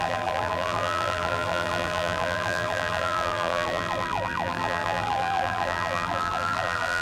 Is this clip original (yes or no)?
no